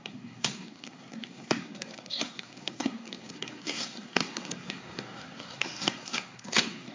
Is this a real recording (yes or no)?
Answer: no